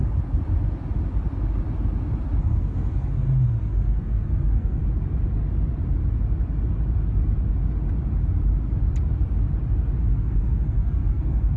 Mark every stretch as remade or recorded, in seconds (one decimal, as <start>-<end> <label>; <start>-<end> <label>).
0.0-2.4 recorded; 2.4-4.8 remade; 4.8-10.0 recorded; 10.0-11.6 remade